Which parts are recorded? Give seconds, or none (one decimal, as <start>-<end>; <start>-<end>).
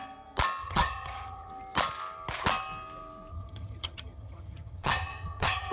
0.0-0.6; 1.5-3.3